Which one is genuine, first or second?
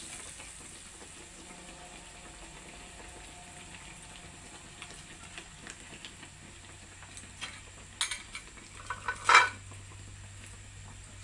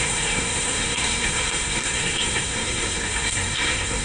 first